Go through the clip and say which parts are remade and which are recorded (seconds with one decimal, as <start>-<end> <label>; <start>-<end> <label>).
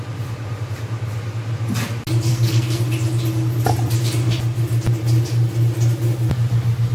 0.0-2.3 recorded; 2.3-2.8 remade; 2.8-6.9 recorded